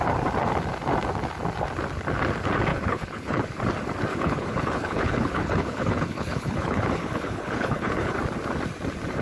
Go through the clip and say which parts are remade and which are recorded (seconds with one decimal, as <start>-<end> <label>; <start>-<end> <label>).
0.0-2.7 recorded; 2.7-3.4 remade; 3.4-4.1 recorded; 4.1-8.2 remade; 8.2-9.2 recorded